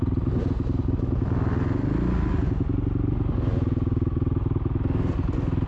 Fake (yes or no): no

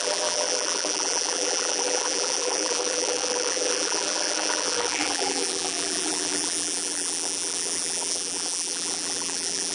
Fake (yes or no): yes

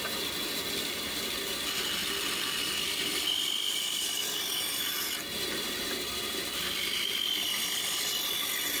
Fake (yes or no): no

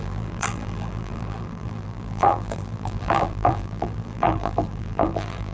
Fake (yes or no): yes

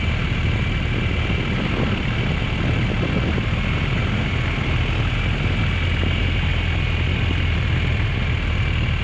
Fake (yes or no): no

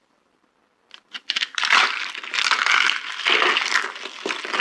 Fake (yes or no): yes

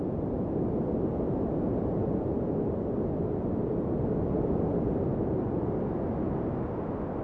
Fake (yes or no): no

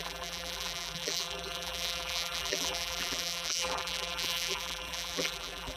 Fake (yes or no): yes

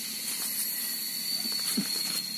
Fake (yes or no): no